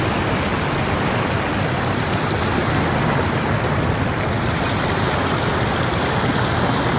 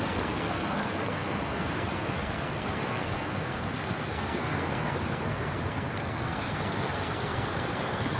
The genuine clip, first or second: first